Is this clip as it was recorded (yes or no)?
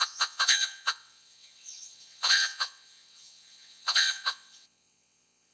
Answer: no